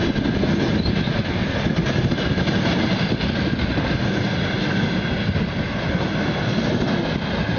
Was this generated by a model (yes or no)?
no